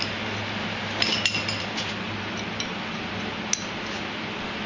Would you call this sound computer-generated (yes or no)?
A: no